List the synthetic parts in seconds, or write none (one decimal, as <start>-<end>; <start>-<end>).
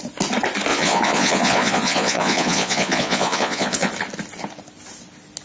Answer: 0.7-3.9